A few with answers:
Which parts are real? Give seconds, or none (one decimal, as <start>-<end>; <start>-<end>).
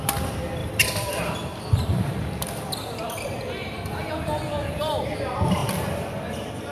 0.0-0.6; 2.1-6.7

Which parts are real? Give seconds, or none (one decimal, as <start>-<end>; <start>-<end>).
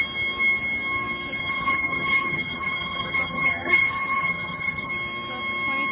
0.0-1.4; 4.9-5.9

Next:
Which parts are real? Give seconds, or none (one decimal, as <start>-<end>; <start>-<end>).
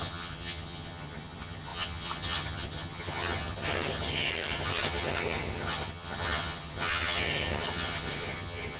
none